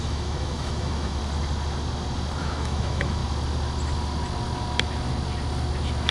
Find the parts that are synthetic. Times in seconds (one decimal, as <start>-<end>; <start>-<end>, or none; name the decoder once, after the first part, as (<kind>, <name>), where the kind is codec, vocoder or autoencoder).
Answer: 0.0-1.2 (autoencoder, DAC-VAE); 2.4-3.2